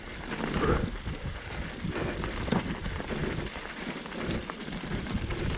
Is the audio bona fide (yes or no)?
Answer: yes